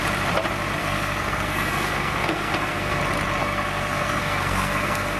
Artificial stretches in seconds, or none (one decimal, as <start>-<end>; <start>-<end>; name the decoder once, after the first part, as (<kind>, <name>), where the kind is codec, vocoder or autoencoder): 0.8-3.0 (codec, SNAC); 3.4-5.2